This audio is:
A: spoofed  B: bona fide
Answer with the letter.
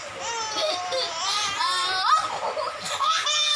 B